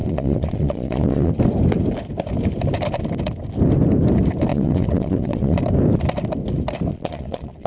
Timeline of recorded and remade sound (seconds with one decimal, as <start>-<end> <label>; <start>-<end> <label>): 0.0-1.3 remade; 1.3-4.5 recorded; 4.5-5.6 remade; 5.6-6.9 recorded; 6.9-7.7 remade